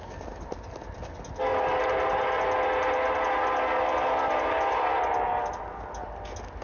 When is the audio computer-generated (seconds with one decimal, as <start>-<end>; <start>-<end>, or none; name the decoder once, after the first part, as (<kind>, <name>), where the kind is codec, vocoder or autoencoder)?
none